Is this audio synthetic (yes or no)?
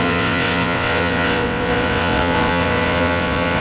yes